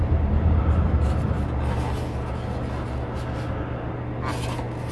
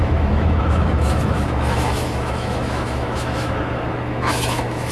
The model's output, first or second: second